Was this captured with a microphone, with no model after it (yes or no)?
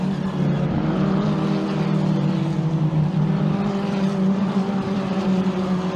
yes